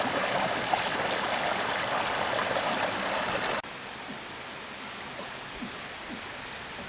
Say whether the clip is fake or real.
real